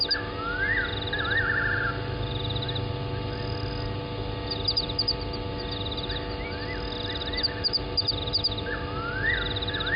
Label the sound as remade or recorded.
recorded